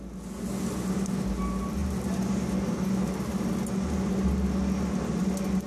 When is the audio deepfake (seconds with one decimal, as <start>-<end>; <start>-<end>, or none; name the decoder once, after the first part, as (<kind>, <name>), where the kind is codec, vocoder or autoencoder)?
none